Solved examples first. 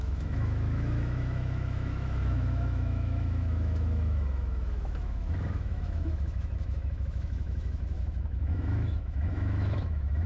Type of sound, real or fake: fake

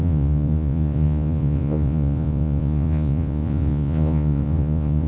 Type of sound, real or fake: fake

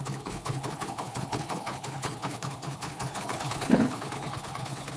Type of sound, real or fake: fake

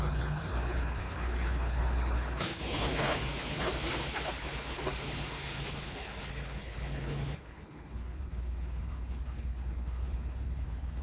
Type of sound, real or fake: fake